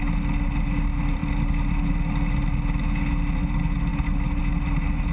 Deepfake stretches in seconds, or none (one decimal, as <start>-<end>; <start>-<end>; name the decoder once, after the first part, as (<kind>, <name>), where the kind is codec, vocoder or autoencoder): none